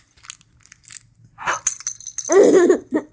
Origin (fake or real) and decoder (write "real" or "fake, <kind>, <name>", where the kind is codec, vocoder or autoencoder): real